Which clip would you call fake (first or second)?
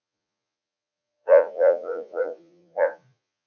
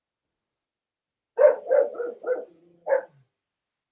first